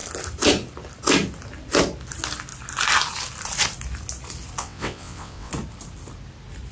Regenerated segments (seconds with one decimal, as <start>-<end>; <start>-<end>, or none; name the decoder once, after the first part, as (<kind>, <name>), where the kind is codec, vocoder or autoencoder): 4.6-5.5 (vocoder, WaveNeXt)